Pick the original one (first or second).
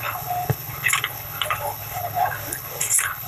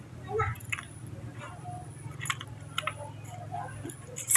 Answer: second